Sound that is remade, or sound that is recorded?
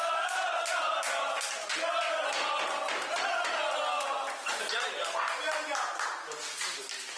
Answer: recorded